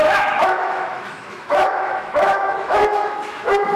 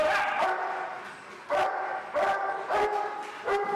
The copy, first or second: first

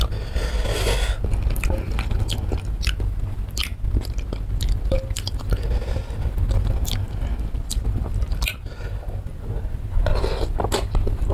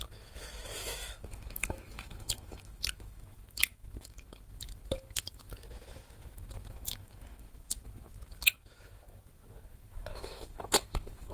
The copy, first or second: second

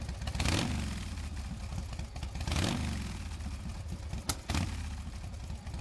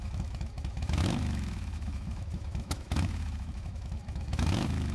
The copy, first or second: second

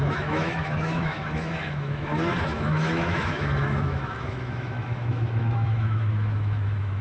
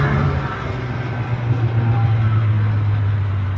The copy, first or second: first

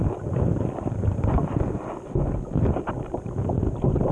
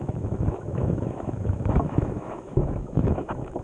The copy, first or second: second